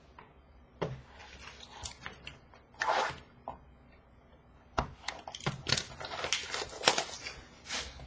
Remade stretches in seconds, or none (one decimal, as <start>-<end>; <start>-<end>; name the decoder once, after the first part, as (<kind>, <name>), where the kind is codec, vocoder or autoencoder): none